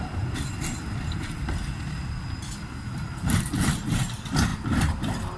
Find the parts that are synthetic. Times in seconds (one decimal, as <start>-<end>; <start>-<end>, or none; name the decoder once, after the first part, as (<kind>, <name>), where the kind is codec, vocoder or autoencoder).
none